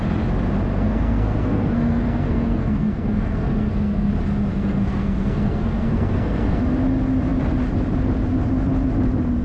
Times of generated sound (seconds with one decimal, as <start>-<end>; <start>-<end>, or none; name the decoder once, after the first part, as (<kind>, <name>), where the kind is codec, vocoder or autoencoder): 0.7-4.1 (codec, SNAC); 4.5-6.6